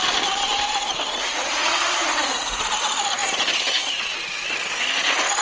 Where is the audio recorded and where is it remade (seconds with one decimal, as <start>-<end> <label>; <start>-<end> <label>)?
0.0-1.3 recorded; 1.3-2.6 remade; 2.6-5.4 recorded